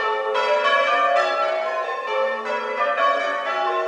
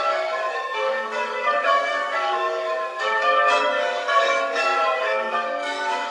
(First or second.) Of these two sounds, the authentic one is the first